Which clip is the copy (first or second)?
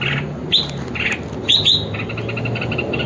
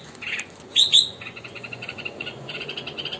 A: second